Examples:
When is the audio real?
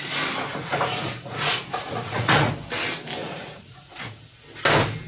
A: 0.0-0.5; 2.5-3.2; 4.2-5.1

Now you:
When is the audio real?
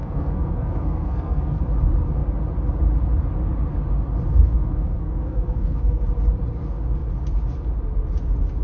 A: 1.6-4.3; 6.0-8.6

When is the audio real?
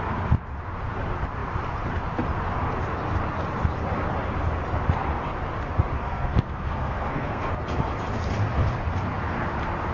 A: 0.0-6.0; 7.5-9.9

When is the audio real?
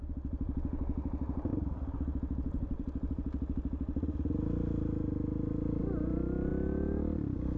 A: 0.0-7.6